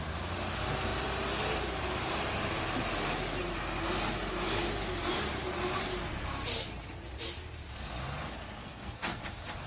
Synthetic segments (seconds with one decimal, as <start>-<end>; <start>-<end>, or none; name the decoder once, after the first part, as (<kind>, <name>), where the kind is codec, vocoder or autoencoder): 8.6-9.2 (codec, SNAC)

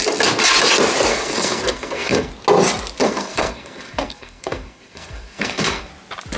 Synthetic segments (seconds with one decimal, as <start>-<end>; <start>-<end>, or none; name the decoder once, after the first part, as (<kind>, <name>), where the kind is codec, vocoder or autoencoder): 1.1-2.3 (codec, SNAC); 3.0-5.9

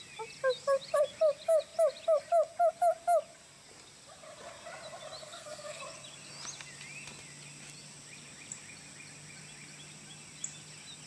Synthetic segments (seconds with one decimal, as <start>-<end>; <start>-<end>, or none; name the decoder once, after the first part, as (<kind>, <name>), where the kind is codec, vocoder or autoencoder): 5.2-5.8 (codec, SNAC)

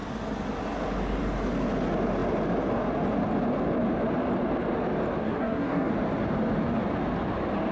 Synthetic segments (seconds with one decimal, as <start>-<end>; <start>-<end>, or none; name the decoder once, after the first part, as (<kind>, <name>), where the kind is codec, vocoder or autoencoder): 5.2-5.9 (codec, SNAC)

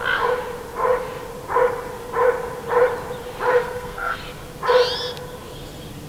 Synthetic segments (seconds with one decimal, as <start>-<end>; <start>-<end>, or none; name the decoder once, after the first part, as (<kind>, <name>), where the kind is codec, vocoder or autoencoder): 3.6-4.2 (codec, SNAC)

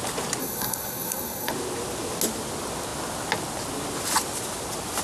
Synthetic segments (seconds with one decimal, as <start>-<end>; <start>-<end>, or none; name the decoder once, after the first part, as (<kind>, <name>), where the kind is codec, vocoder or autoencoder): 0.4-1.5 (codec, SNAC)